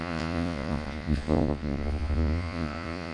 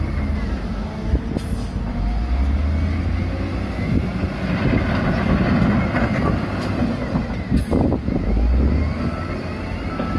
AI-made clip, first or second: first